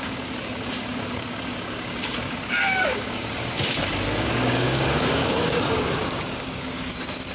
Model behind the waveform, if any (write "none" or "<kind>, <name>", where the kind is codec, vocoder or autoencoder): codec, DAC